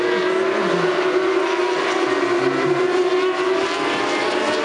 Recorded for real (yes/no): yes